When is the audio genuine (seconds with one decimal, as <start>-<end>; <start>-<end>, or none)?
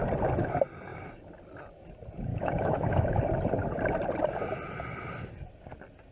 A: 0.0-2.3; 3.2-6.1